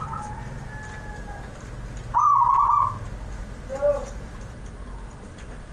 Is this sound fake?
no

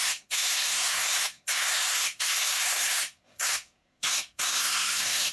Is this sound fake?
yes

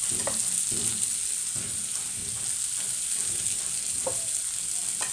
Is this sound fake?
no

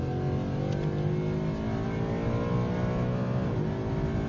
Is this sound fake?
no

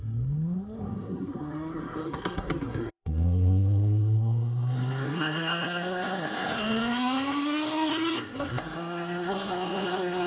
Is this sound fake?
yes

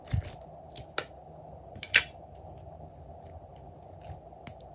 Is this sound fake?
no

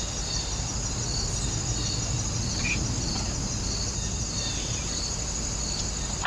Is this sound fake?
no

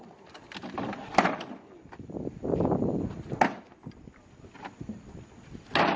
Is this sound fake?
no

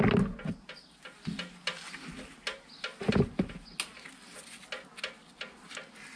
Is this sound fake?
no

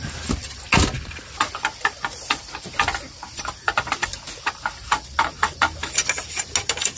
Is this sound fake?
no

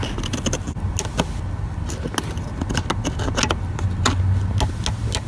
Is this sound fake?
no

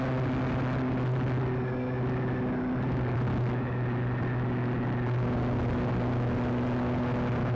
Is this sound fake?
no